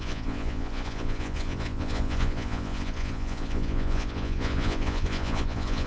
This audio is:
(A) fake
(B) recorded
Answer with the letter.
A